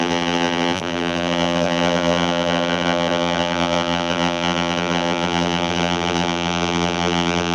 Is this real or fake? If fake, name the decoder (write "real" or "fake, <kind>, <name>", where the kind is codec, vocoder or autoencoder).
fake, vocoder, BigVGAN v2